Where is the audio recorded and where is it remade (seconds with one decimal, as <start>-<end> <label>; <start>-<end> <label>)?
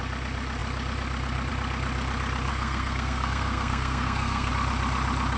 0.0-2.5 recorded; 2.5-4.5 remade; 4.5-5.4 recorded